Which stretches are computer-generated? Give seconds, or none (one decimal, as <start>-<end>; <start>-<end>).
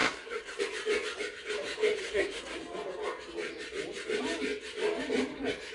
0.0-0.6; 2.0-2.6